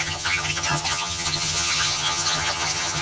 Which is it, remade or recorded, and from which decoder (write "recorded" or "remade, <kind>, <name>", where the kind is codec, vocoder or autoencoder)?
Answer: remade, vocoder, HiFi-GAN